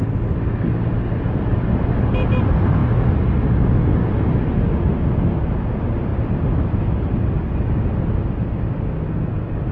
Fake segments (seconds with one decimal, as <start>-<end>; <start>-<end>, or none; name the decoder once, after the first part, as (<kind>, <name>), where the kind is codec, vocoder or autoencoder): none